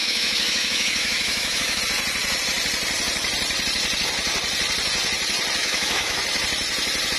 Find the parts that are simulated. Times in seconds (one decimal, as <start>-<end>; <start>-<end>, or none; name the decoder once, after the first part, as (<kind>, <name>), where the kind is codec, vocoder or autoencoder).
0.0-1.8 (autoencoder, DAC-VAE); 5.6-6.2